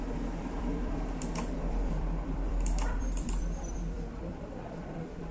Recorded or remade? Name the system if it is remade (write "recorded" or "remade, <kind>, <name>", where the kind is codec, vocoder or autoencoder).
remade, vocoder, BigVGAN v2